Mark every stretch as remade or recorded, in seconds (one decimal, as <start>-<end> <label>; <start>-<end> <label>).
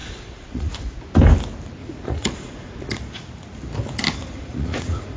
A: 0.0-1.0 remade; 1.0-1.8 recorded; 1.8-2.9 remade; 2.9-4.3 recorded; 4.3-5.2 remade